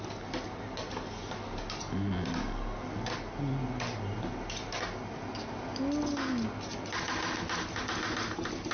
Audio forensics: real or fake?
real